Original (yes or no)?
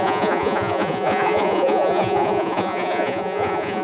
no